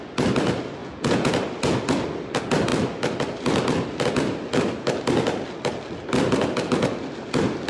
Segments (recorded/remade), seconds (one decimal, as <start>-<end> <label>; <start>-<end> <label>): 0.0-0.8 recorded; 0.8-1.3 remade; 1.3-7.7 recorded